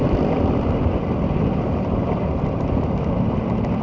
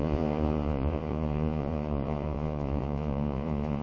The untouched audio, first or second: first